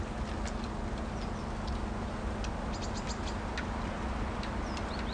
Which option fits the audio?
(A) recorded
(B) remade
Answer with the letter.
A